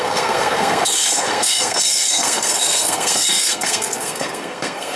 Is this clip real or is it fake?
fake